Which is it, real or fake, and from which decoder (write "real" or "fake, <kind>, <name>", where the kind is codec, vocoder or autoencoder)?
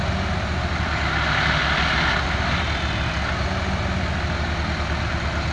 real